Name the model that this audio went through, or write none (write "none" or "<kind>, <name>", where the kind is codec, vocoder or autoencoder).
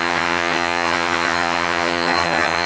vocoder, HiFi-GAN